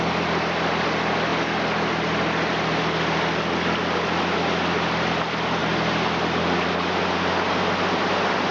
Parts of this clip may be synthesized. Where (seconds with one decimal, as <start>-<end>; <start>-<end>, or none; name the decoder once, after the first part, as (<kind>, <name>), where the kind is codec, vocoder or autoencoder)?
none